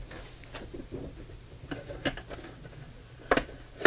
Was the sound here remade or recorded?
recorded